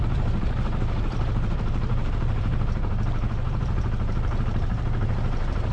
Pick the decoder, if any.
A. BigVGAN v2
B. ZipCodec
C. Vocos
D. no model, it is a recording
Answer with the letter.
A